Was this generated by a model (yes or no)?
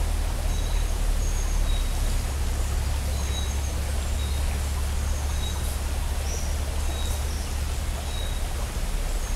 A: no